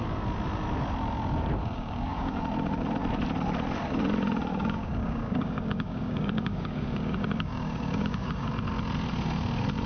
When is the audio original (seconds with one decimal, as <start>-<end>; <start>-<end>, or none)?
0.0-1.6; 2.4-4.5; 8.5-9.9